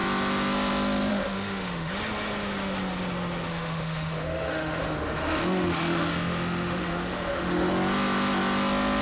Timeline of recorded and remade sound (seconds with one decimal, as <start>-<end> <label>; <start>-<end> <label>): 0.0-1.1 recorded; 1.1-1.9 remade; 1.9-3.5 recorded; 3.5-7.7 remade; 7.7-9.0 recorded